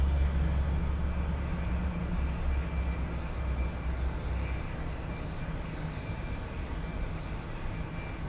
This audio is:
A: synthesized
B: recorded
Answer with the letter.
B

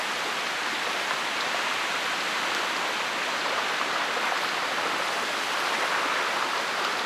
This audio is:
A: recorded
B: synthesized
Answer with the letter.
A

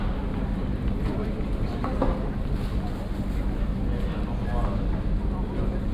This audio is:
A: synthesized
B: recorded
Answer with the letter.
B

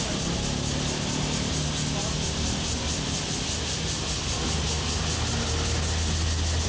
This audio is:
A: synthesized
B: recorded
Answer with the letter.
B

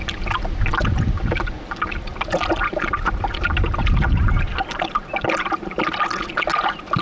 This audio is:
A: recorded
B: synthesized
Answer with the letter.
A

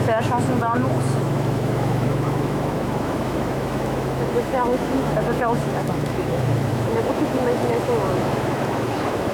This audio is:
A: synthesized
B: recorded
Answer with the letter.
A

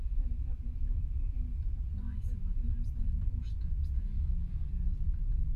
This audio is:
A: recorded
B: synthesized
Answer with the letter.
A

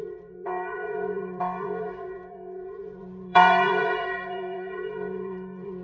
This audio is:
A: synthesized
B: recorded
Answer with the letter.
A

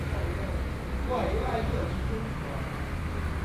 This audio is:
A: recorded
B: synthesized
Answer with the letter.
A